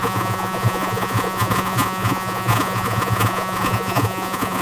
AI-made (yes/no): yes